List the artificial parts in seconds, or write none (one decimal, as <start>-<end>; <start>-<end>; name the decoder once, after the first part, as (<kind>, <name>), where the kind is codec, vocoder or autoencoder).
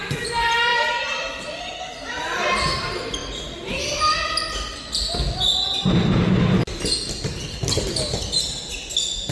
none